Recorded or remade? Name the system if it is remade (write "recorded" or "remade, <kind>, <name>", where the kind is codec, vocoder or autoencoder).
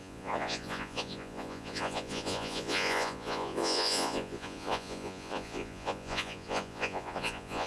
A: remade, vocoder, Vocos